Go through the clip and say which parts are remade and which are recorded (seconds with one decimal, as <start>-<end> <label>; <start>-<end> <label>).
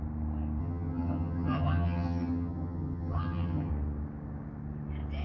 0.0-0.6 recorded; 0.6-3.7 remade; 3.7-5.2 recorded